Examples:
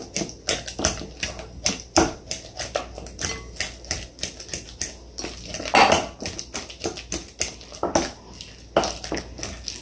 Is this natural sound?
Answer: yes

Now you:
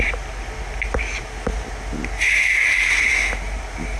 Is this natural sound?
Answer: yes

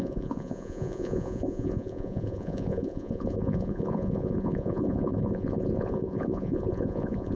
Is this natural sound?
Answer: no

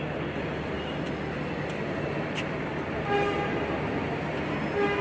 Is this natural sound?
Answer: yes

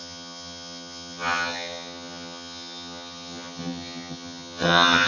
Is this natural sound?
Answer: no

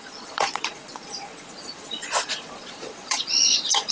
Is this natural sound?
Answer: no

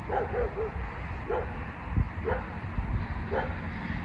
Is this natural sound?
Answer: yes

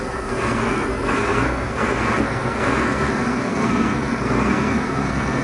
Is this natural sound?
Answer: no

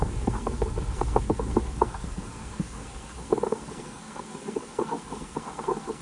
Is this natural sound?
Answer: no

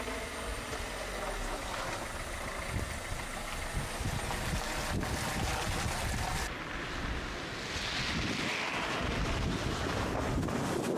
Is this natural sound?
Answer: yes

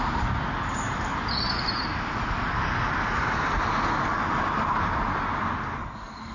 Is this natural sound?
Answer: yes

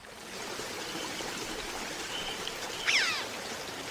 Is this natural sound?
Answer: no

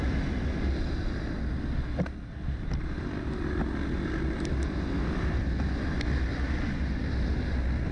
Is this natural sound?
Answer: yes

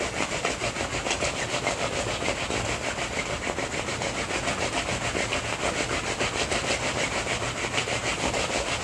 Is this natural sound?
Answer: yes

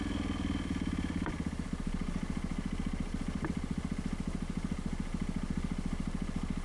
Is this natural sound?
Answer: yes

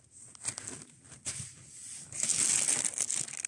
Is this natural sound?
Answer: yes